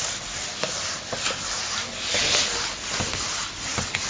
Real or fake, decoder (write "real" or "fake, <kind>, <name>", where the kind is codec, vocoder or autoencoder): real